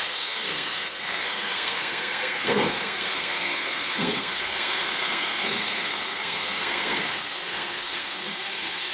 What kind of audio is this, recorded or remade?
remade